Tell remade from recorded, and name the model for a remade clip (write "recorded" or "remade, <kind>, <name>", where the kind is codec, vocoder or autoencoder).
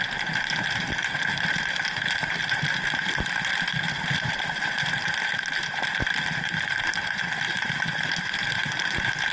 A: recorded